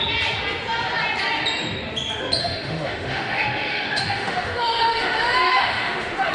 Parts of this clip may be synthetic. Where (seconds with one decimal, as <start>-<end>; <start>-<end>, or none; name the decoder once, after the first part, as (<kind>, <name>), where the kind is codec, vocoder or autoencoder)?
2.4-6.3 (autoencoder, DAC-VAE)